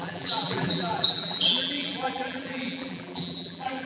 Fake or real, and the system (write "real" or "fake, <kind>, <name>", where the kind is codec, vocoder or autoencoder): fake, vocoder, BigVGAN v2